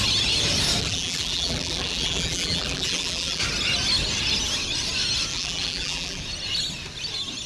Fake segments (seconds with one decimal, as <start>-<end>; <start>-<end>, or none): 0.8-3.4; 5.3-6.2